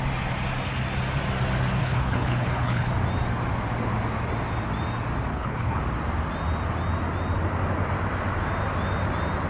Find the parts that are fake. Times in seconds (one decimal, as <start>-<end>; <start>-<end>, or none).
1.8-2.9; 5.3-5.8

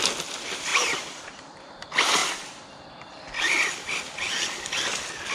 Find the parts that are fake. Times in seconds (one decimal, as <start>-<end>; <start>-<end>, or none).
0.7-1.7

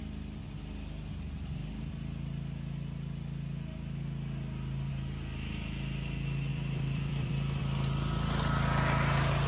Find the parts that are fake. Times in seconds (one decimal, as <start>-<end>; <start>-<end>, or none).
6.5-7.6

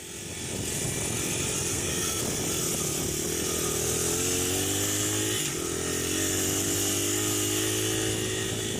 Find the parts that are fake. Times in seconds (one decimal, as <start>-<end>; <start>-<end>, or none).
1.7-2.2